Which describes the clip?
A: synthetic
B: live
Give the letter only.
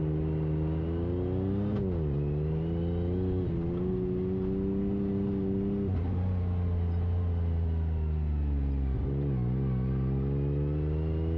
B